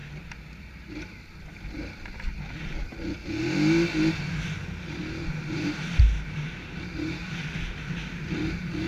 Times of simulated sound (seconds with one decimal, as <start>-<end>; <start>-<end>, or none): 5.0-8.1